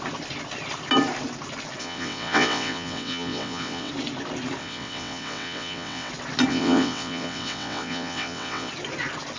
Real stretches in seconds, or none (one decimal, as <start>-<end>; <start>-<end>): 0.0-1.8; 3.9-4.6; 6.1-6.5; 8.7-9.4